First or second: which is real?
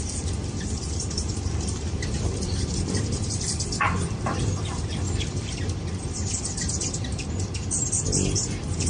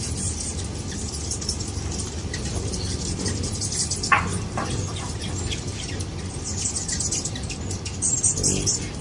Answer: second